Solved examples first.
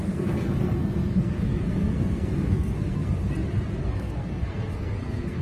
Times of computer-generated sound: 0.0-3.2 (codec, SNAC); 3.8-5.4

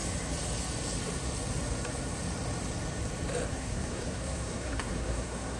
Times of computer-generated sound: 3.5-5.6 (codec, SNAC)

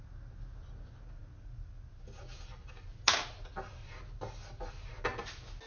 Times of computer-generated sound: none

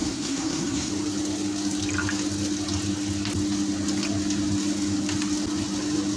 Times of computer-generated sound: 0.0-0.9 (codec, SNAC)

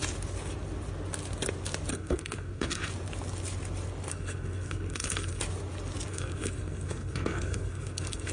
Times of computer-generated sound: 1.9-2.9 (codec, SNAC); 4.1-5.4; 6.1-8.3

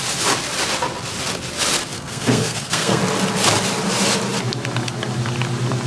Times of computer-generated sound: 1.9-3.0 (codec, SNAC)